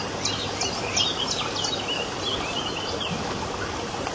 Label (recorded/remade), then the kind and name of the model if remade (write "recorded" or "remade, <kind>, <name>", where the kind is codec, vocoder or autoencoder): recorded